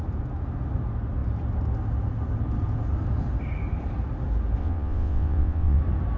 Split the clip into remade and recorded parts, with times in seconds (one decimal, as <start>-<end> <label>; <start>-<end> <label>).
0.0-4.6 recorded; 4.6-5.8 remade; 5.8-6.2 recorded